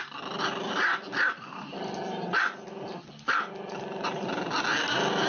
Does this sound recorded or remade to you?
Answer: recorded